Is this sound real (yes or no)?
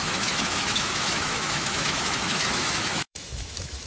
no